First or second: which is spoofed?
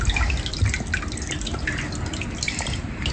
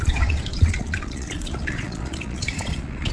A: second